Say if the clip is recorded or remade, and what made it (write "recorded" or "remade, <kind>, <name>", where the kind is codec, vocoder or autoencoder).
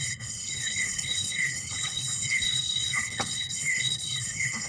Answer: remade, codec, HILCodec